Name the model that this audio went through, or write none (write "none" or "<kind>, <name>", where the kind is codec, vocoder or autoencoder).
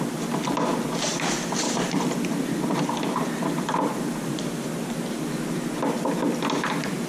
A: none